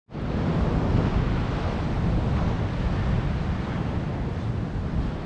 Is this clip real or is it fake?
real